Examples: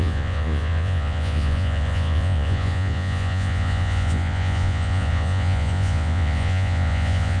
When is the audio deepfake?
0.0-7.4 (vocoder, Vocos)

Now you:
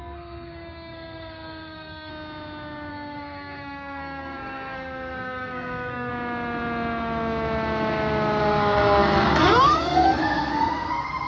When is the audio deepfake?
0.0-2.1 (codec, SNAC); 2.9-6.1; 8.4-11.3

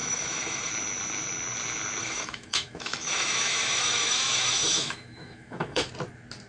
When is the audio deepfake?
0.0-0.7 (autoencoder, DAC-VAE); 2.0-5.9